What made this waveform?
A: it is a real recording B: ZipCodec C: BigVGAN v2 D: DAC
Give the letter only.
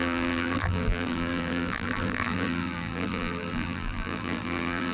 C